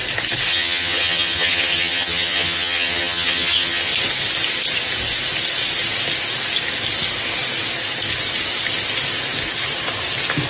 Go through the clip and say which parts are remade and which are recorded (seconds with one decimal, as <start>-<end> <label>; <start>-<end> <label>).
0.0-0.5 recorded; 0.5-3.9 remade; 3.9-10.5 recorded